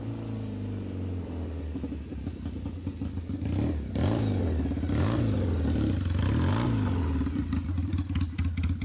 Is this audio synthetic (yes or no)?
no